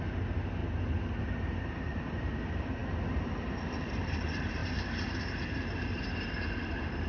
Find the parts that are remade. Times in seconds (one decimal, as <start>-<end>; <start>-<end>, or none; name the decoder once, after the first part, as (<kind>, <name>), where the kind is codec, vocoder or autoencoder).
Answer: 0.0-0.6 (vocoder, BigVGAN v2); 1.2-2.8; 4.0-7.1